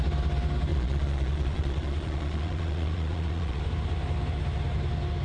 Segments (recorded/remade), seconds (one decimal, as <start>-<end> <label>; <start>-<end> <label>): 0.0-0.7 recorded; 0.7-3.6 remade; 3.6-5.2 recorded